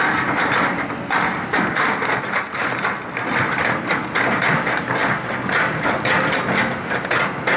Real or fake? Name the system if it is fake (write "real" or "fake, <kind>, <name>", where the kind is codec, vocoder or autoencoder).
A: real